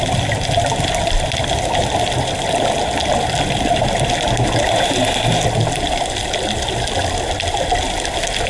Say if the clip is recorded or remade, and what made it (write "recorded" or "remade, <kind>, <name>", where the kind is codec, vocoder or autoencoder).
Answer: recorded